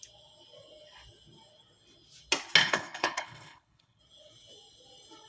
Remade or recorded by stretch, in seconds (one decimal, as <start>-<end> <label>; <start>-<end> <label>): 0.0-2.6 recorded; 2.6-4.0 remade; 4.0-5.3 recorded